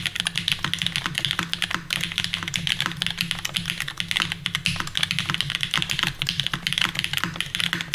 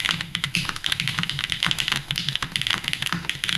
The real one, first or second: first